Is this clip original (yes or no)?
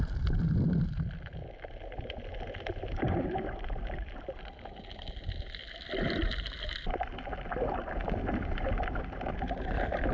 yes